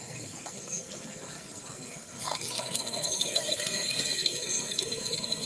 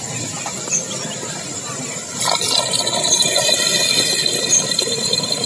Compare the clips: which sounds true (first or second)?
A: second